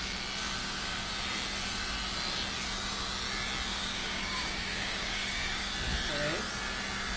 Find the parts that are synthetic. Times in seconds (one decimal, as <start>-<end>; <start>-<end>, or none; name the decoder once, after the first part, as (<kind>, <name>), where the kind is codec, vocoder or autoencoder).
0.6-1.1 (codec, DAC); 3.7-5.7